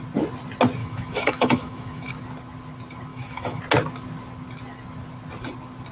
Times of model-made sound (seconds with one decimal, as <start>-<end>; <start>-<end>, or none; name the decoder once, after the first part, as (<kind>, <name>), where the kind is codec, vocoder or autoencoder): 0.8-2.1 (autoencoder, DAC-VAE); 3.1-3.6

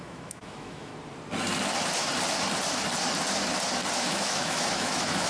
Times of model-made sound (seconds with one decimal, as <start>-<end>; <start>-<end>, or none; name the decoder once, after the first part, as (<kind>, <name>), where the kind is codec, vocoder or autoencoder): 0.0-0.9 (autoencoder, DAC-VAE); 4.1-5.3

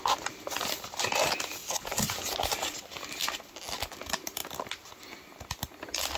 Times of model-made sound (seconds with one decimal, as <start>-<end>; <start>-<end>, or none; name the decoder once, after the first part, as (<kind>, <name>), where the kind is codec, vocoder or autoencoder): none

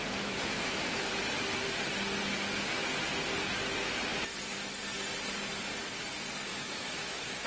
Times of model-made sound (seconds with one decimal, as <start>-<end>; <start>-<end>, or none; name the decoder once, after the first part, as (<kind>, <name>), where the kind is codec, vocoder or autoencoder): 0.0-1.3 (autoencoder, DAC-VAE); 6.5-7.5

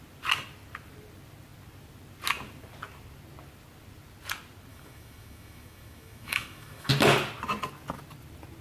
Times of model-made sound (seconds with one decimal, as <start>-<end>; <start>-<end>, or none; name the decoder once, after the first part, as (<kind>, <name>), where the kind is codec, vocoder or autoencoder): 4.7-6.9 (autoencoder, DAC-VAE)

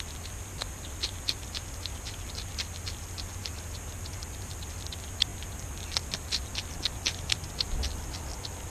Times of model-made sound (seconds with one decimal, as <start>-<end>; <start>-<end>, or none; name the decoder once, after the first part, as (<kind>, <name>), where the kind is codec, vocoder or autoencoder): none

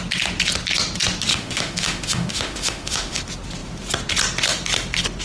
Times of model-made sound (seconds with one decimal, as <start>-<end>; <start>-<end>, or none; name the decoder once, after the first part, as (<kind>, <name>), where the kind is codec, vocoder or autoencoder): 1.3-3.2 (autoencoder, DAC-VAE)

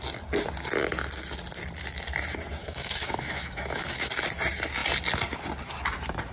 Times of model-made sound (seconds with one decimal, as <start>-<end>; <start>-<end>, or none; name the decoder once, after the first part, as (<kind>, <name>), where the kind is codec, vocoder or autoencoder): 2.6-4.1 (autoencoder, DAC-VAE)